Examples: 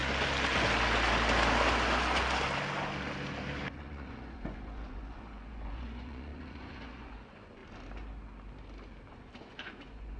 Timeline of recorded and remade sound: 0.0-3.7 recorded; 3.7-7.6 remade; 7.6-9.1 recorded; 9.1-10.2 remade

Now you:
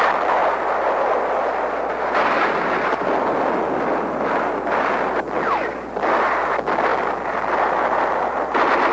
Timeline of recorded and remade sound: 0.0-8.9 recorded